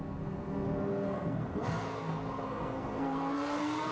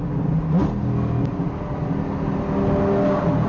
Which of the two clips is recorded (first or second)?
second